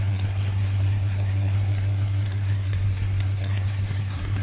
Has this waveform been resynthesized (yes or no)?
yes